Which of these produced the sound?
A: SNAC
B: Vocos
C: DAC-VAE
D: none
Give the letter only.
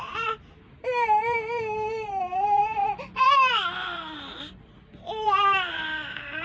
D